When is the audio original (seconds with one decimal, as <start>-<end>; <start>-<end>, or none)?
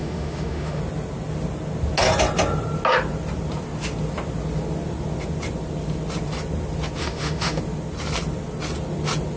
0.8-7.0; 7.6-9.4